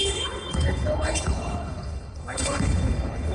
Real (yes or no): no